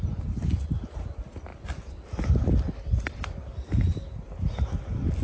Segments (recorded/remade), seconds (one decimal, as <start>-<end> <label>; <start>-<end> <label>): 0.0-5.2 recorded